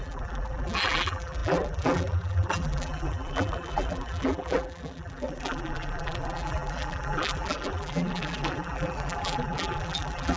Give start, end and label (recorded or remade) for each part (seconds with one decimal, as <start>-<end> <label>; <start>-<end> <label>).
0.0-10.4 remade